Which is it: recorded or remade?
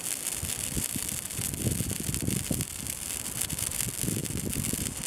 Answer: recorded